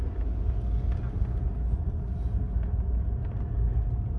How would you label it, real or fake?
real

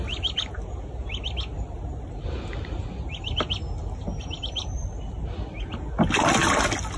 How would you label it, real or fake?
real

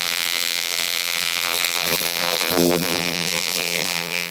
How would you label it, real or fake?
fake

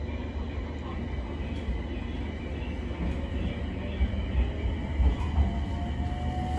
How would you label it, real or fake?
real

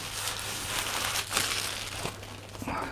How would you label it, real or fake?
real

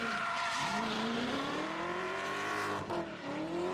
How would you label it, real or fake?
fake